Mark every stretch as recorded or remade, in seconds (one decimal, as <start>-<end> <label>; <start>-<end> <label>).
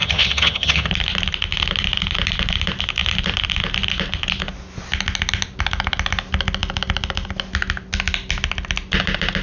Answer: 0.0-0.9 remade; 0.9-9.4 recorded